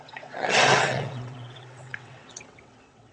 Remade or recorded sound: remade